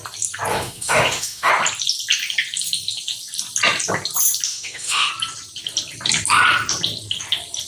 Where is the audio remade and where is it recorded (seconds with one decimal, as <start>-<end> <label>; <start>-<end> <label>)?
0.0-0.5 recorded; 0.5-1.5 remade; 1.5-4.5 recorded; 4.5-5.1 remade; 5.1-7.7 recorded